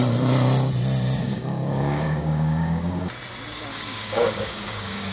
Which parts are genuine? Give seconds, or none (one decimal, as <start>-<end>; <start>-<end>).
0.0-1.2; 3.1-3.7